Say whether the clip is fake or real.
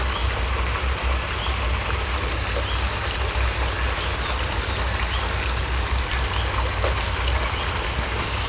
real